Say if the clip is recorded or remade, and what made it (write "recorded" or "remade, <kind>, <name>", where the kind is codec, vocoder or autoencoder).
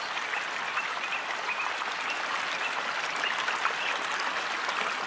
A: recorded